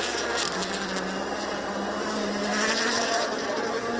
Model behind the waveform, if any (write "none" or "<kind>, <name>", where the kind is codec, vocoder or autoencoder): none